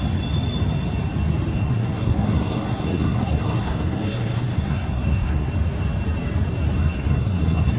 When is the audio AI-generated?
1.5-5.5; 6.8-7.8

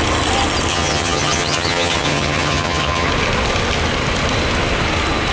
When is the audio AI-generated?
0.7-3.1

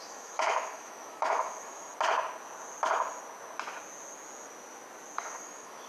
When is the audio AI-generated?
0.0-1.9; 5.2-5.9

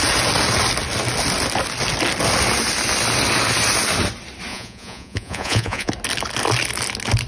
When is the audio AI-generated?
4.5-5.9

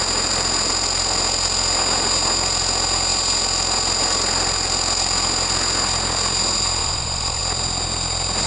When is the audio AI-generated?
6.8-7.4

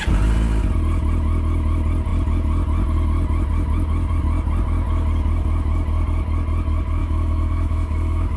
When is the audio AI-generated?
7.0-8.4

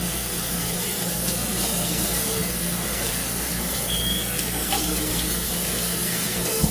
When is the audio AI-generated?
0.0-6.7

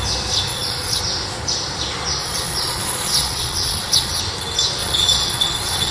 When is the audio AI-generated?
0.5-1.0; 2.2-4.2; 4.8-5.9